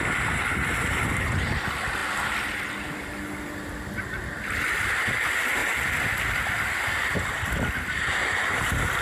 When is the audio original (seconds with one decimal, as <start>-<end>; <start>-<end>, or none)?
0.0-9.0